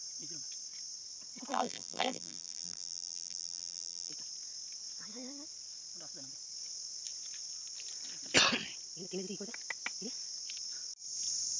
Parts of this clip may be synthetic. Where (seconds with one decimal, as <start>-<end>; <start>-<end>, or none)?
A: 1.5-4.1